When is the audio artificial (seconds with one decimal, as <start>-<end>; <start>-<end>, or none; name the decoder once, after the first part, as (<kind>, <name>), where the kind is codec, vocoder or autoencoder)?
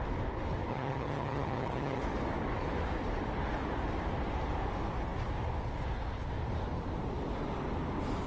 0.7-2.0 (vocoder, HiFi-GAN)